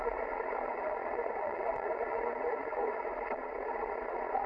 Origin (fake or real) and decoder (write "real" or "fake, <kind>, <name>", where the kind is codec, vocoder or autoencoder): fake, vocoder, Vocos